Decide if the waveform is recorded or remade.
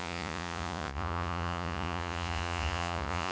remade